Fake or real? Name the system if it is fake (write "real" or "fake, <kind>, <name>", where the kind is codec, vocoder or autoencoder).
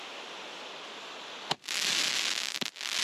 real